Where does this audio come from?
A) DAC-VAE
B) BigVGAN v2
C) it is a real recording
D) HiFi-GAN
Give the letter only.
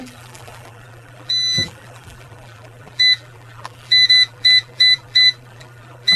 B